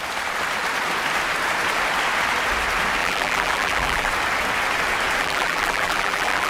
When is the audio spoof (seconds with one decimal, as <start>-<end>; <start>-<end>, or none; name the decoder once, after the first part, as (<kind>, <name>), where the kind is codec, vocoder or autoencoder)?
3.0-4.1 (vocoder, BigVGAN v2); 5.2-6.5